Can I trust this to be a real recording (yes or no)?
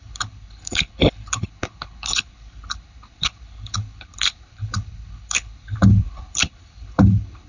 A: no